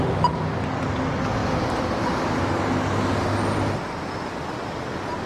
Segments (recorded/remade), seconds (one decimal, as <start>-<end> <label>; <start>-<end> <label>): 0.0-5.3 recorded

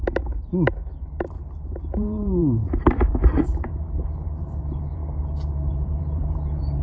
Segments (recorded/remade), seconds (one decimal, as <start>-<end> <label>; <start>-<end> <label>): 0.0-5.0 remade; 5.0-5.7 recorded; 5.7-6.8 remade

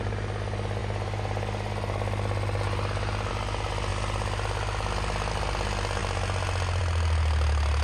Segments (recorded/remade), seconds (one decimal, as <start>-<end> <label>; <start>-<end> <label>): 0.0-7.8 recorded

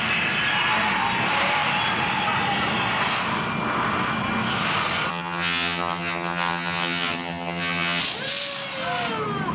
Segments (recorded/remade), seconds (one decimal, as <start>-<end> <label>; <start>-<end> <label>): 0.0-5.1 recorded; 5.1-8.0 remade; 8.0-9.5 recorded